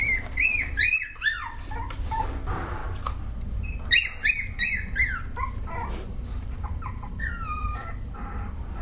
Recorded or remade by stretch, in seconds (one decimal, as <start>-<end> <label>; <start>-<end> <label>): 0.0-2.8 remade; 2.8-5.7 recorded; 5.7-8.8 remade